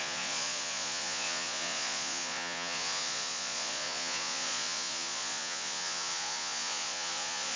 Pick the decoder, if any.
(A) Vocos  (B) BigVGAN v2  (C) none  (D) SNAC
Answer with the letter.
A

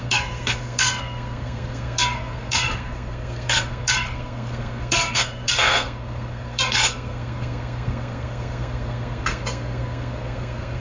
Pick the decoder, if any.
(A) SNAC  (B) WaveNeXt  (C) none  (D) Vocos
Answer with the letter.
A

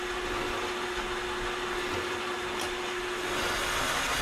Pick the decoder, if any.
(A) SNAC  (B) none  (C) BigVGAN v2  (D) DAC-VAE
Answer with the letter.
B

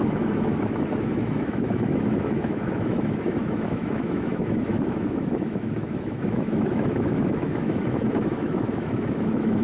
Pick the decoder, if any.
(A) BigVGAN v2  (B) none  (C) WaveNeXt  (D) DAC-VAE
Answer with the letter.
D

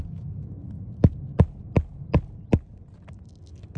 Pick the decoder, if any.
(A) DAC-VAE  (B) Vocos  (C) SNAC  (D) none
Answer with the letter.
D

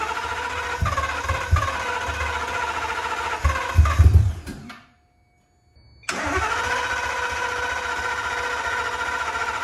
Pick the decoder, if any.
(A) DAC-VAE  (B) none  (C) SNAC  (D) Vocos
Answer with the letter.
B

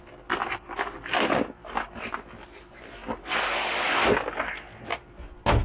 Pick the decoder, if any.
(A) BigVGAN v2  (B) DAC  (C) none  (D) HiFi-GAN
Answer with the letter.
C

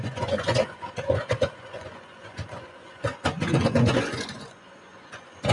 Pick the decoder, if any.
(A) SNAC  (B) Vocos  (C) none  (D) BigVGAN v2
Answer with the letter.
B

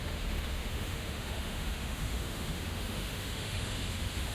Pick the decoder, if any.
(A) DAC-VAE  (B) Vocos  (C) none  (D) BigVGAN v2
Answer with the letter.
A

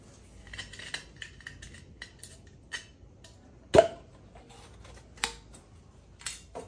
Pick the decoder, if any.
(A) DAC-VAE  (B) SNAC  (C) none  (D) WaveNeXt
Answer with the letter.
C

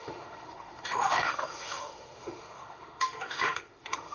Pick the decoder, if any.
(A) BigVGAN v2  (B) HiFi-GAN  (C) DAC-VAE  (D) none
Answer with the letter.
C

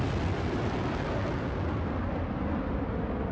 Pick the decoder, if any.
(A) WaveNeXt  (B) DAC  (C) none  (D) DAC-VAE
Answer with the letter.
C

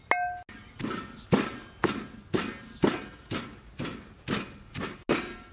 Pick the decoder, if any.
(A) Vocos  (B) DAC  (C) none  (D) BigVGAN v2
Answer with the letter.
C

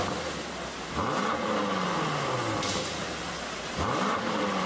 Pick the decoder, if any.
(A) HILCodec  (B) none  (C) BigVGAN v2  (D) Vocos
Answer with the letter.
B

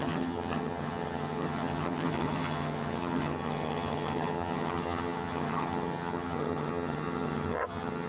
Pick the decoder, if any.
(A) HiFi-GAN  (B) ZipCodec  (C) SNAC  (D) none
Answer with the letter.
A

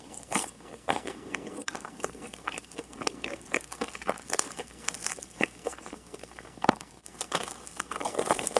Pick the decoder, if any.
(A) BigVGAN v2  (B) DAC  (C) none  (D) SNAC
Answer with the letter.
D